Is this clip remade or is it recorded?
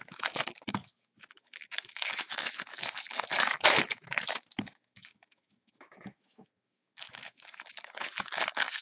remade